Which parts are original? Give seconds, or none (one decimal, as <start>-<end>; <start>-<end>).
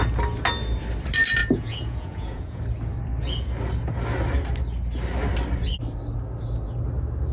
0.0-1.4; 2.6-7.3